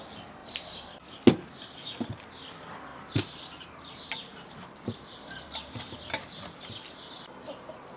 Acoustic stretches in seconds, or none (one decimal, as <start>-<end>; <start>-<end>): 0.0-0.4; 0.9-2.9; 6.6-8.0